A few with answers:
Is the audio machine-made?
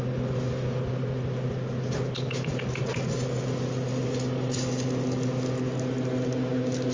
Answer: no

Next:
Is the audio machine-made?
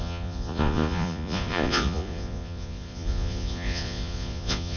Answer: yes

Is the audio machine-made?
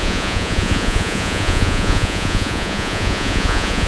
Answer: yes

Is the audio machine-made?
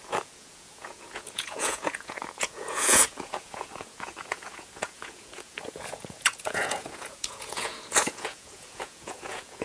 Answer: yes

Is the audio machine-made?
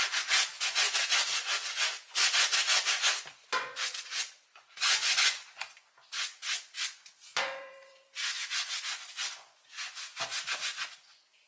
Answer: yes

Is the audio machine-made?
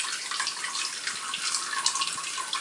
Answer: no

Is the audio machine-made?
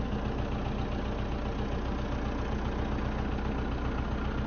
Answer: no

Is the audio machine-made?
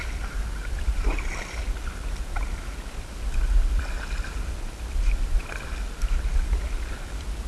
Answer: no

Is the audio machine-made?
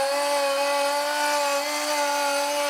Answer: no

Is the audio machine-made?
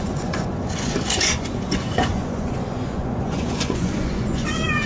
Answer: yes